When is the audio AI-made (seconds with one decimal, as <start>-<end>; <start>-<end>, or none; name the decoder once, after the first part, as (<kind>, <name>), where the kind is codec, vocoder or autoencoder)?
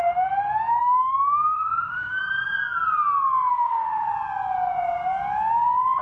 0.8-2.2 (autoencoder, DAC-VAE); 3.5-4.1